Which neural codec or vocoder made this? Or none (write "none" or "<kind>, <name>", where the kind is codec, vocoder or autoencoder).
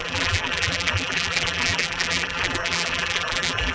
vocoder, BigVGAN v2